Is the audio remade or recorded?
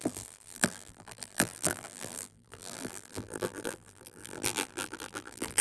remade